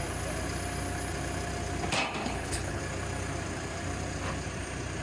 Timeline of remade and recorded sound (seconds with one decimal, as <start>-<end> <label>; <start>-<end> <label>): 0.0-2.2 recorded; 2.2-2.8 remade; 2.8-5.0 recorded